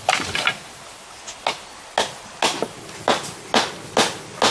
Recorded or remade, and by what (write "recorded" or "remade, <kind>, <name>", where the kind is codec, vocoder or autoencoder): recorded